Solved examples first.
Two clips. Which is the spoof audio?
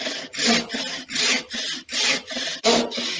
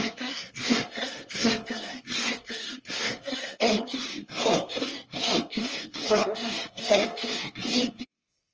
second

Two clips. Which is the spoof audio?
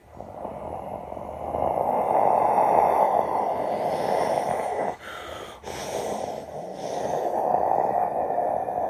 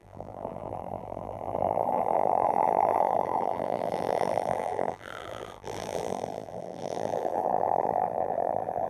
second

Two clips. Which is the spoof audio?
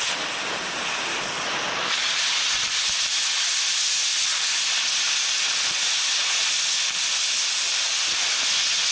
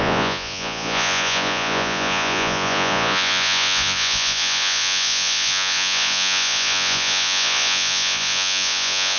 second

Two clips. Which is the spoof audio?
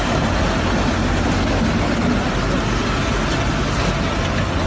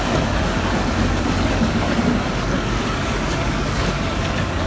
second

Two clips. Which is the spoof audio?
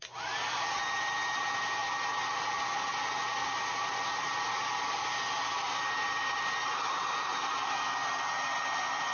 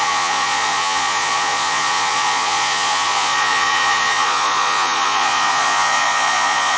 second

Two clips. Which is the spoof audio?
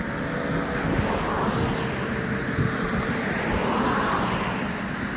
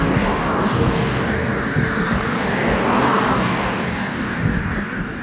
second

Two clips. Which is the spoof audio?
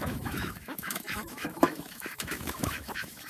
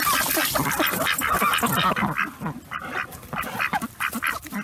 first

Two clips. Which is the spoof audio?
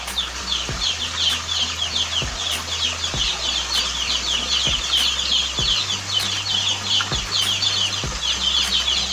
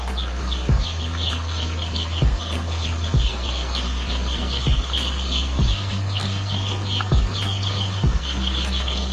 second